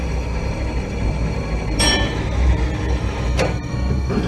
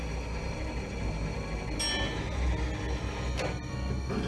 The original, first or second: second